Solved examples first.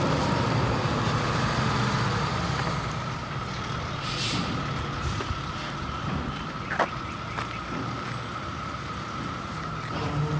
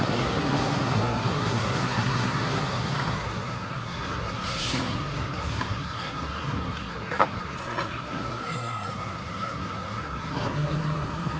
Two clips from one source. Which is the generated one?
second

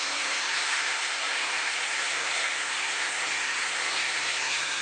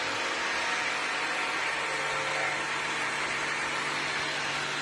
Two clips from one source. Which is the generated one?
first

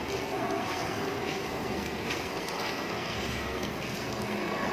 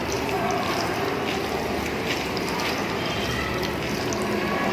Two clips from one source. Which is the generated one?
first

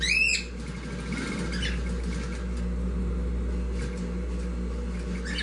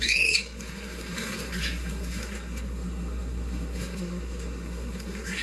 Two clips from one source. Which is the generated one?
second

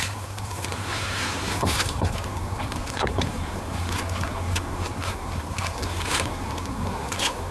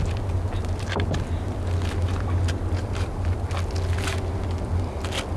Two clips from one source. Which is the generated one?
first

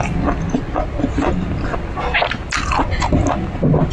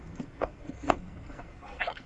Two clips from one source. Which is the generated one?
second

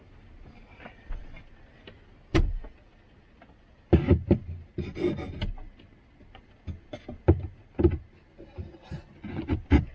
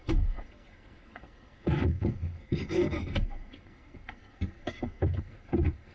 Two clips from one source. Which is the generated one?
second